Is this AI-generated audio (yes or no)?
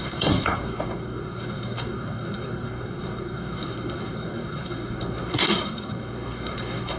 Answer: yes